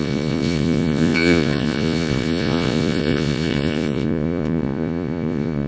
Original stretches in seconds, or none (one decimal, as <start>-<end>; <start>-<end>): none